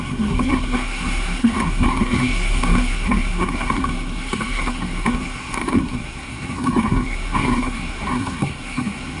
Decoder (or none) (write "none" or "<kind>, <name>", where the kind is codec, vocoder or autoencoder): codec, SNAC